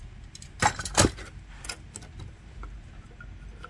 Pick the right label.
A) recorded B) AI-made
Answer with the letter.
A